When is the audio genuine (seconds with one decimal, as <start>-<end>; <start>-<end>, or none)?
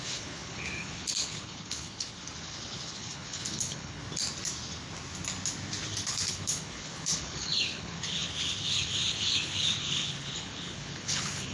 4.0-6.1